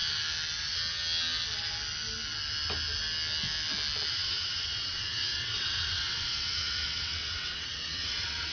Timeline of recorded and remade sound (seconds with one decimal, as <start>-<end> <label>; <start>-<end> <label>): 0.0-4.1 recorded; 4.1-8.5 remade